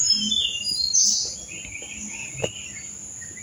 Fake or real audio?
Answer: real